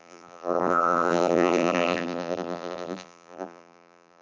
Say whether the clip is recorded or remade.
remade